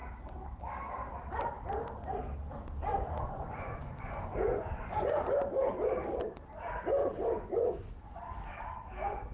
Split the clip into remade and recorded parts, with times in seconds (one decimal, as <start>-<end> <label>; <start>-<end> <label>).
0.0-2.9 recorded; 2.9-5.5 remade; 5.5-7.0 recorded; 7.0-7.9 remade; 7.9-9.3 recorded